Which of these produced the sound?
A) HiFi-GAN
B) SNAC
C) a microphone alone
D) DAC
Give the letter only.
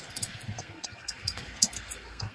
B